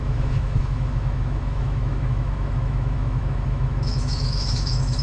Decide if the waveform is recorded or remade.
remade